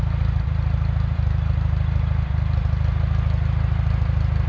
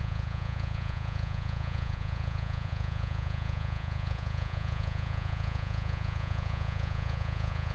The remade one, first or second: second